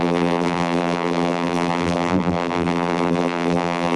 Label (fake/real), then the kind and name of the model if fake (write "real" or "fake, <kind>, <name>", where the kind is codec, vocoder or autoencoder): fake, vocoder, BigVGAN v2